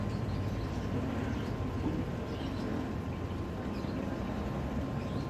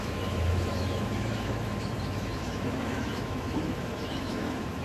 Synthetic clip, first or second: second